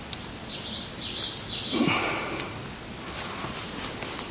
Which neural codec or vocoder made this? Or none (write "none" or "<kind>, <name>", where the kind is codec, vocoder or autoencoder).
none